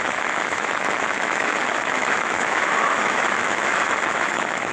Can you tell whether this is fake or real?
fake